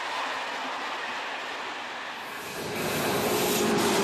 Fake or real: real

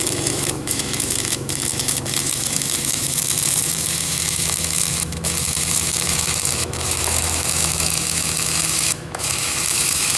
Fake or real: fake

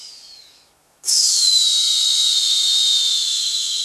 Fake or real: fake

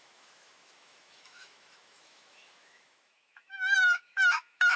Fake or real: fake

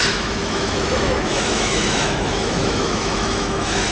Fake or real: fake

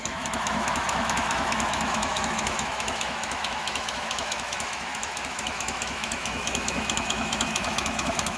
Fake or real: fake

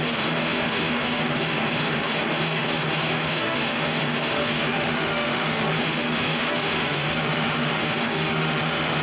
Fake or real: fake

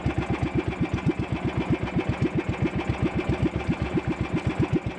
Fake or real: real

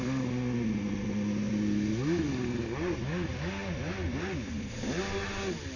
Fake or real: real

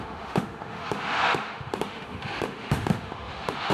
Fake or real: fake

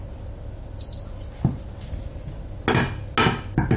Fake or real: real